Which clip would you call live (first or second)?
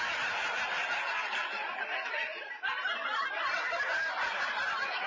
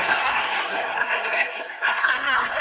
first